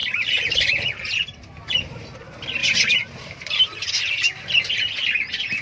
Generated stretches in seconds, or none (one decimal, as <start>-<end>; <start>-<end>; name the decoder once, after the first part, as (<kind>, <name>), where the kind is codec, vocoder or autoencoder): 0.0-0.5 (vocoder, BigVGAN v2); 2.6-3.9